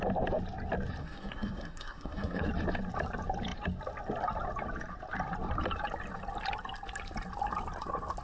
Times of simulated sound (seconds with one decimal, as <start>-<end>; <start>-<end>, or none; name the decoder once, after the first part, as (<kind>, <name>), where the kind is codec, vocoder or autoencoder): 1.0-2.5 (codec, SNAC)